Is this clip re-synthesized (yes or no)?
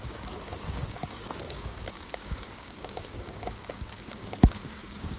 yes